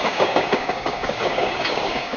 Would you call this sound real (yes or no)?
no